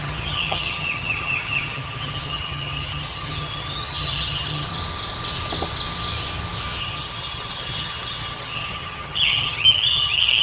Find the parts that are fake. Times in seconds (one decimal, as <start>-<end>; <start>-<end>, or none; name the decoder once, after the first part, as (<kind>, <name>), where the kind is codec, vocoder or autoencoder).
0.0-4.7 (vocoder, HiFi-GAN); 6.8-10.4